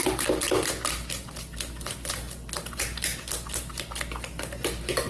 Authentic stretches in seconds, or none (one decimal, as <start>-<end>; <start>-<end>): 0.0-5.1